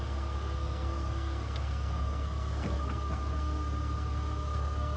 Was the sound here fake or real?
fake